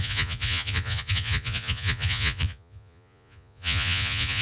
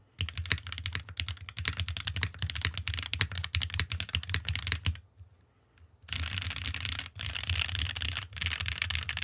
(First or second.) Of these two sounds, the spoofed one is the first